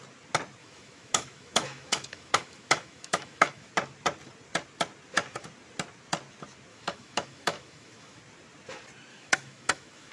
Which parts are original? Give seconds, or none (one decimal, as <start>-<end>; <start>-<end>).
0.0-0.6; 3.7-6.7; 8.2-9.1